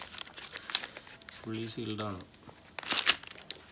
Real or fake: real